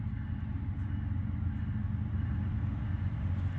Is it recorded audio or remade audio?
recorded